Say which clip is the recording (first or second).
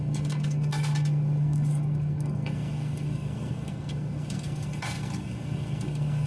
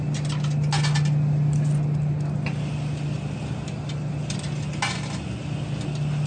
second